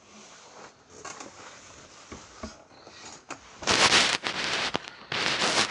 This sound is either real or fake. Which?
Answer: real